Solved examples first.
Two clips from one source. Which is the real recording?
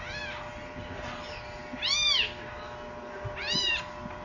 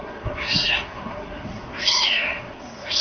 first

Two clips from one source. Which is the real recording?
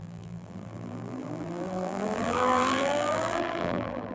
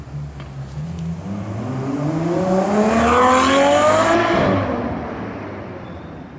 second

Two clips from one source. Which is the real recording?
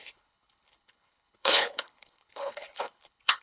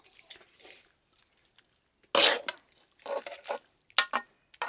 second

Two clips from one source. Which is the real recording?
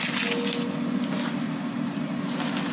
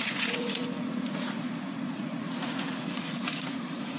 first